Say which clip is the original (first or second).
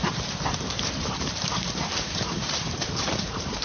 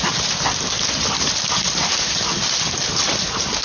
second